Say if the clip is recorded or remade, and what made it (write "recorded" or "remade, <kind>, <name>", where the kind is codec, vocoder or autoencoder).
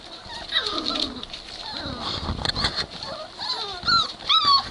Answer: recorded